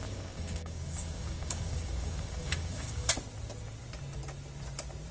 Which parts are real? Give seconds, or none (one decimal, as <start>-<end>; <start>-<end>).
3.1-5.1